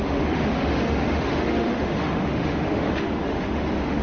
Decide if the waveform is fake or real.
fake